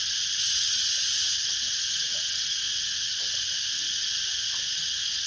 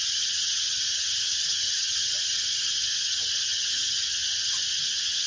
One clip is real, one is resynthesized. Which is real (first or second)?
first